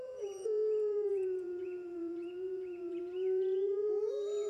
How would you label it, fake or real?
fake